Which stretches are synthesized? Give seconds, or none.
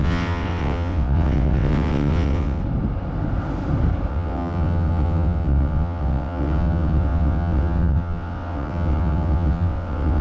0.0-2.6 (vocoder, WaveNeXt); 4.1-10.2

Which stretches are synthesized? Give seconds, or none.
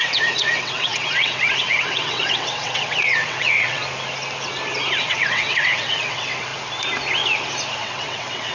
0.0-3.8 (vocoder, WaveNeXt); 5.0-6.5; 7.8-8.5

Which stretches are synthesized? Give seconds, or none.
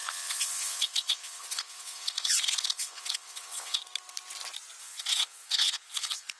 0.0-3.8 (vocoder, WaveNeXt); 4.8-6.4